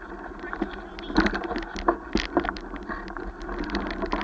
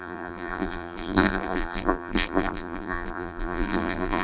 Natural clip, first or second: first